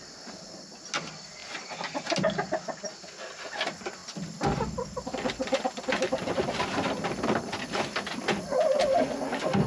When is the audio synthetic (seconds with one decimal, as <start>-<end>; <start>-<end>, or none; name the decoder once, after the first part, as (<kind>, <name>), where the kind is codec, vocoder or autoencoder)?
4.0-8.8 (vocoder, BigVGAN v2)